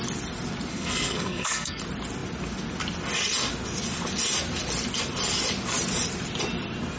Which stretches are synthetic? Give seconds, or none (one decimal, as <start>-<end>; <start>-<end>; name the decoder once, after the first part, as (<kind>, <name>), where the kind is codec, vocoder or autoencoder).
0.7-1.8 (codec, SNAC)